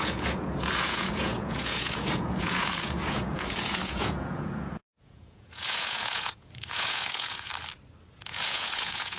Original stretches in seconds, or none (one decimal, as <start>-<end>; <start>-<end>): 7.5-8.1